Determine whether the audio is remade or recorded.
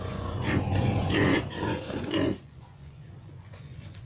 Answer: remade